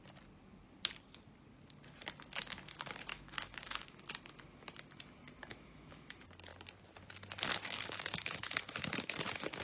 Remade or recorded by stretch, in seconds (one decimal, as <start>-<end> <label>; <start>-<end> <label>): 0.0-3.1 recorded; 3.1-4.0 remade; 4.0-5.4 recorded; 5.4-6.1 remade; 6.1-7.5 recorded; 7.5-9.6 remade